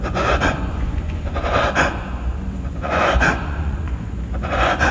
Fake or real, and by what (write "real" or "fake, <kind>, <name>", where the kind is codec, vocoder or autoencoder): fake, vocoder, Vocos